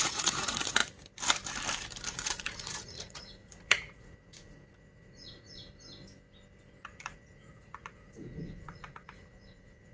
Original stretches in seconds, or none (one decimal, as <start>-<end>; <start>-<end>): 0.8-2.1; 5.6-6.8